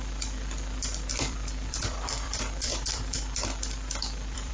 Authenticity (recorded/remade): remade